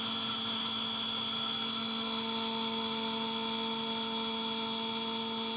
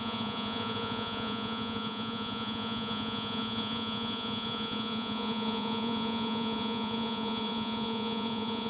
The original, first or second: first